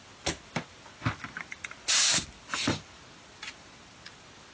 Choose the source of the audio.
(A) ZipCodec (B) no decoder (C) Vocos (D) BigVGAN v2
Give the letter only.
B